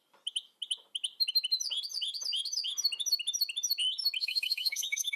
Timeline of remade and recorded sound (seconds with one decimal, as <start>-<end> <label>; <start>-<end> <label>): 0.0-4.2 recorded; 4.2-5.2 remade